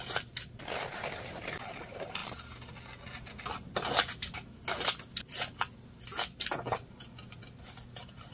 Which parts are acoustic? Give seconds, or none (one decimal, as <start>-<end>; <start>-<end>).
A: 0.0-8.3